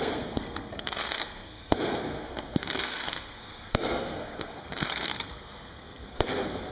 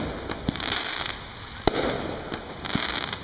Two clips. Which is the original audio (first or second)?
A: second